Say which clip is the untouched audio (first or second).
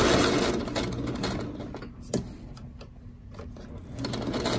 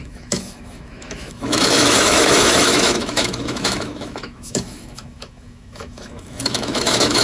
first